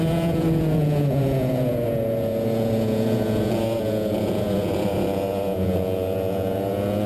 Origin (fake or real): fake